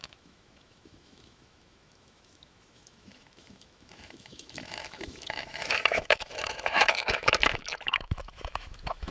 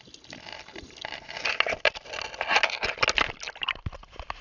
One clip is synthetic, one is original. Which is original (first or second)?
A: second